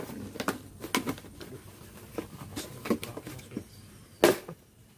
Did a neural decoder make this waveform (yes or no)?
no